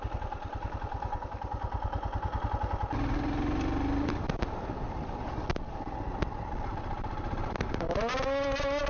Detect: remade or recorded recorded